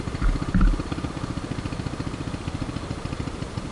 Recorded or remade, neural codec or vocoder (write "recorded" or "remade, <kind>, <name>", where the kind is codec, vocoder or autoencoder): recorded